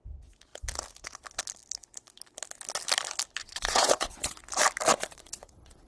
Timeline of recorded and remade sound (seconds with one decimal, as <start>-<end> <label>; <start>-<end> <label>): 0.0-3.4 recorded; 3.4-4.4 remade; 4.4-4.9 recorded; 4.9-5.9 remade